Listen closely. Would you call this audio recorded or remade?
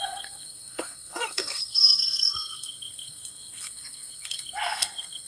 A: remade